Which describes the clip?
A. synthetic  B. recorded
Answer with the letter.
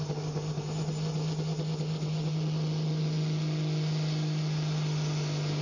B